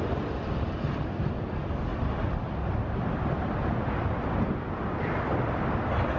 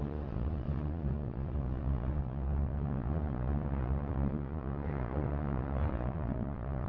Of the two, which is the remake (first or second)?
second